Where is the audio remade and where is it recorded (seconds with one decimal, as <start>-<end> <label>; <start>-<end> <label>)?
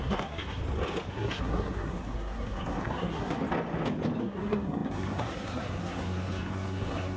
0.0-0.6 remade; 0.6-1.1 recorded; 1.1-3.4 remade; 3.4-4.2 recorded; 4.2-7.2 remade